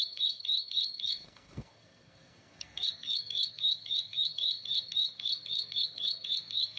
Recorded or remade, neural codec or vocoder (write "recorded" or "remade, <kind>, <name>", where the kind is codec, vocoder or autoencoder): remade, codec, SNAC